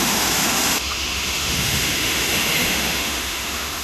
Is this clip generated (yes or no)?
yes